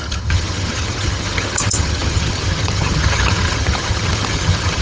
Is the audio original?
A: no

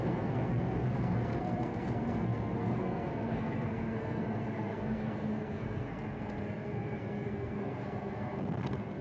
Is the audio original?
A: no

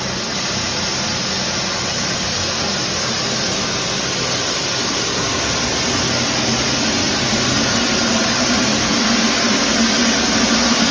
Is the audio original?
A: yes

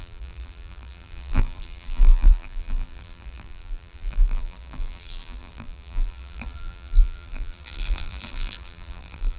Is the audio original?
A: no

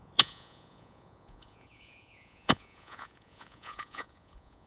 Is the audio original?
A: no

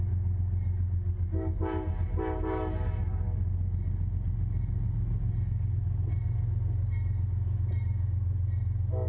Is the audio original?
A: yes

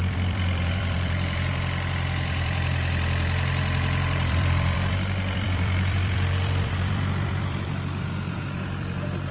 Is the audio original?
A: no